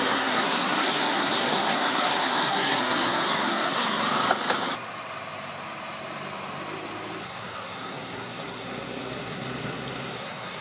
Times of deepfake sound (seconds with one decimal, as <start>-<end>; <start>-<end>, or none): 0.0-4.0; 7.2-10.6